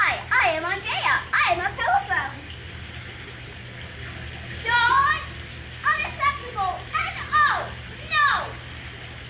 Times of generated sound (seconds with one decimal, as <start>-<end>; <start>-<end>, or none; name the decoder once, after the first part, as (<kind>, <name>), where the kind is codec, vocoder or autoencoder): none